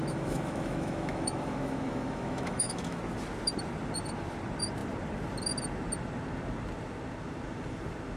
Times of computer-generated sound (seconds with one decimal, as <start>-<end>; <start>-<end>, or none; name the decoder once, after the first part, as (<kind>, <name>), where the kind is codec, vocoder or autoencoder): 0.0-3.0 (autoencoder, DAC-VAE)